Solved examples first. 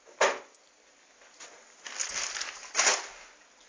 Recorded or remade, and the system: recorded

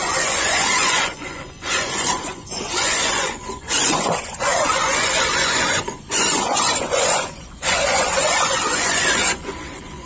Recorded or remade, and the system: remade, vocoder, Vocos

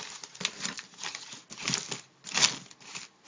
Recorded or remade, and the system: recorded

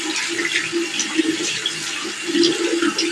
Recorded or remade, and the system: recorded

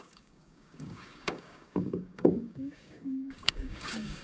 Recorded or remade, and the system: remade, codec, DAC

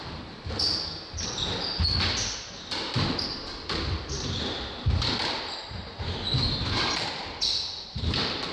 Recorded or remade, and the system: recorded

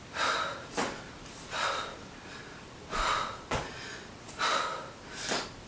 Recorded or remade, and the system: recorded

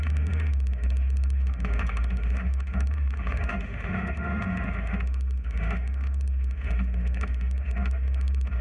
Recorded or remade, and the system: remade, autoencoder, DAC-VAE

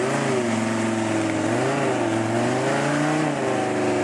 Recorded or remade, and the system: recorded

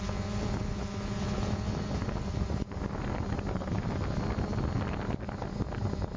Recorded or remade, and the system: recorded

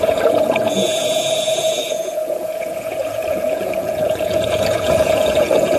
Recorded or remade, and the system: remade, vocoder, Vocos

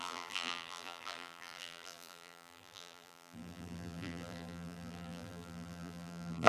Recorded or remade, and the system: remade, vocoder, BigVGAN v2